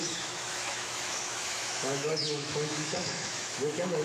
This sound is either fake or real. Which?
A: fake